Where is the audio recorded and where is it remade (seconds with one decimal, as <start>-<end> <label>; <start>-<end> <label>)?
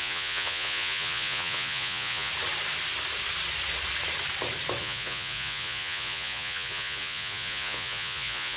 0.0-2.3 remade; 2.3-4.8 recorded; 4.8-8.6 remade